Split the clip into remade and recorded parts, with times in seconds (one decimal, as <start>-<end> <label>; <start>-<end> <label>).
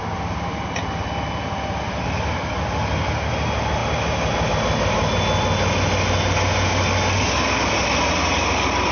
0.0-8.9 recorded